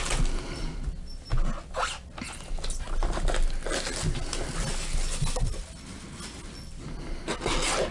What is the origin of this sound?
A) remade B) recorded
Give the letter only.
B